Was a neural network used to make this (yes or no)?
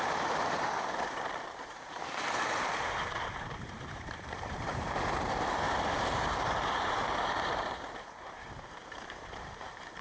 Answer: yes